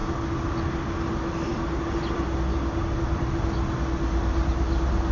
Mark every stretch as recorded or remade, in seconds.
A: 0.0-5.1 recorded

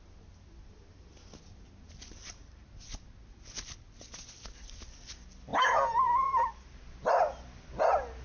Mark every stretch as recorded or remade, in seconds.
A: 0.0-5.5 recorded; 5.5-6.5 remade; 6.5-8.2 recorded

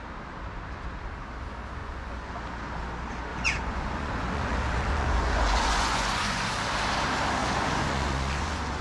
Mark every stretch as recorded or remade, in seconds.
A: 0.0-1.8 recorded; 1.8-2.3 remade; 2.3-3.3 recorded; 3.3-6.5 remade; 6.5-7.4 recorded; 7.4-8.8 remade

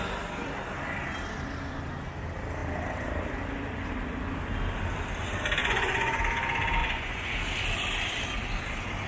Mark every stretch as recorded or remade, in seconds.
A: 0.0-5.6 recorded; 5.6-6.2 remade; 6.2-6.8 recorded; 6.8-7.4 remade; 7.4-9.1 recorded